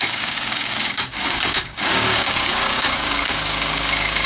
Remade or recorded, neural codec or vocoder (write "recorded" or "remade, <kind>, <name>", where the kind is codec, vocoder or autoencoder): remade, codec, DAC